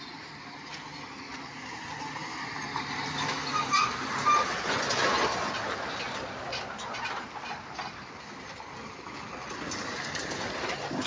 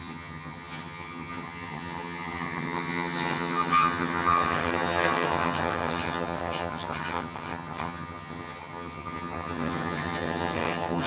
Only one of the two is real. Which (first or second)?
first